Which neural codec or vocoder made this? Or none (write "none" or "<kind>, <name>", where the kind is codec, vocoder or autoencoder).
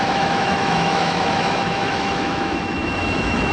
autoencoder, DAC-VAE